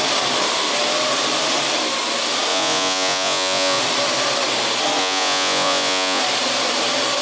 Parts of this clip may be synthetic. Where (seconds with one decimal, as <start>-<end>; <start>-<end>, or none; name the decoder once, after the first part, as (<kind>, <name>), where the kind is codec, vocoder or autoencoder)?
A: 2.5-3.8 (vocoder, Vocos); 5.0-6.2